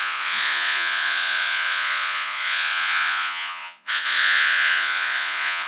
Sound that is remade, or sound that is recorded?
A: remade